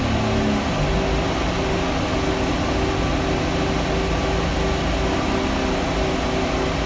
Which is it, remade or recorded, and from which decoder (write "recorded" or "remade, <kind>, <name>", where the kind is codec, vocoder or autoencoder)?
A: recorded